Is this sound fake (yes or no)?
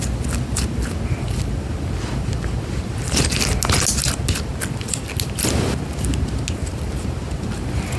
no